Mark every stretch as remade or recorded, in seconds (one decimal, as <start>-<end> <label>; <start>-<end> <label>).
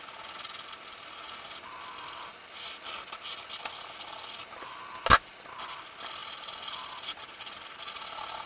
0.0-8.5 recorded